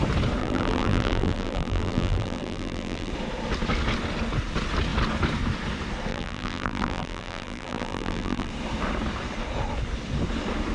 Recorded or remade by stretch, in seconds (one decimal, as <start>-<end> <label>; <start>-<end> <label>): 0.0-0.4 recorded; 0.4-3.1 remade; 3.1-6.1 recorded; 6.1-8.5 remade; 8.5-10.7 recorded